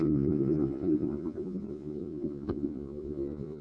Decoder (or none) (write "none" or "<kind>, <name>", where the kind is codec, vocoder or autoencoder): vocoder, Vocos